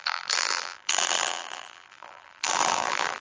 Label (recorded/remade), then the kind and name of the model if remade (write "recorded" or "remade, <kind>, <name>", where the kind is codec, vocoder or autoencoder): remade, vocoder, BigVGAN v2